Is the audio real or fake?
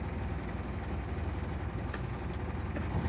real